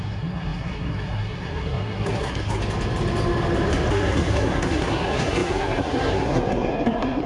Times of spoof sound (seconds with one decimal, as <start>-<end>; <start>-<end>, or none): 0.0-2.6; 3.9-7.3